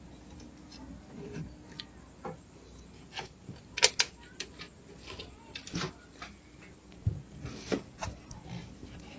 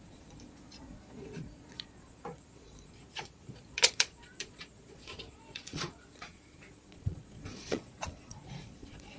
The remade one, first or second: second